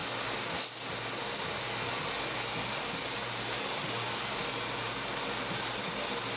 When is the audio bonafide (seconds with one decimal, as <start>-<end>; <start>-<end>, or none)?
0.0-6.4

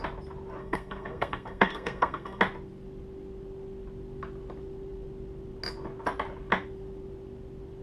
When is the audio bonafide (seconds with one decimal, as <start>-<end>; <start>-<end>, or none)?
0.0-0.6; 2.4-7.8

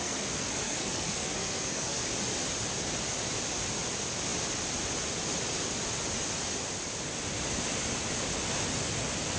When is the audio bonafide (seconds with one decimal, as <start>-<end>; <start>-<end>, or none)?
2.0-9.4

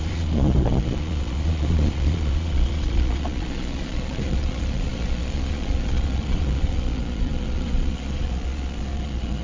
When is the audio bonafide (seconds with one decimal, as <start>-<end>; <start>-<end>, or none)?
none